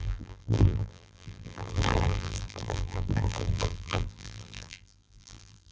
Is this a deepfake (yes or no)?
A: yes